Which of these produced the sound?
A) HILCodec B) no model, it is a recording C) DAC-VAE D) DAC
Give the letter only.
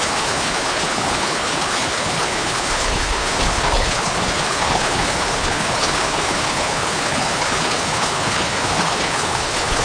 A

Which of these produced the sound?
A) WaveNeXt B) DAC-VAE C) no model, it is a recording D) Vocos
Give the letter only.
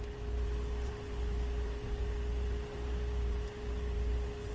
C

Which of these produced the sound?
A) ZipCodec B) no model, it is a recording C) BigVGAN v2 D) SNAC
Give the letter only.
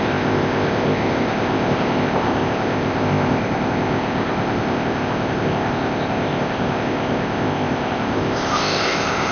A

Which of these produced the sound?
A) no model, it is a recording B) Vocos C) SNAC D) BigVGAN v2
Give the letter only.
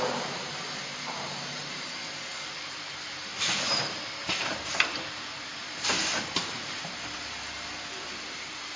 D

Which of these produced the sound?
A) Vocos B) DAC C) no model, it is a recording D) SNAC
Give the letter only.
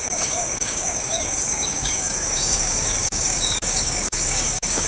B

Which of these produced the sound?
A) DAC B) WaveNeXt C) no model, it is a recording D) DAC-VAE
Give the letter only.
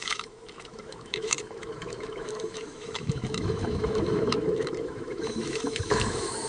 D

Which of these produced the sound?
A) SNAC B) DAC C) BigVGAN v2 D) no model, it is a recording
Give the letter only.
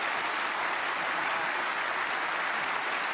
D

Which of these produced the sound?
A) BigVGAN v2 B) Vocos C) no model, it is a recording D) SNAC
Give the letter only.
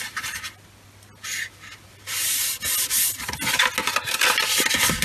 C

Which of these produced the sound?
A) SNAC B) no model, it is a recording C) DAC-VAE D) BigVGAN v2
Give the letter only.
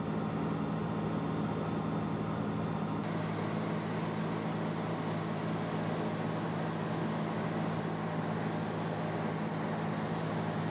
B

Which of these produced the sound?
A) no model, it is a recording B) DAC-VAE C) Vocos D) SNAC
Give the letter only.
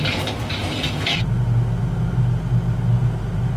A